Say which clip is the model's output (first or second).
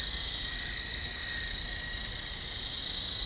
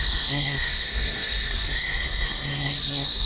second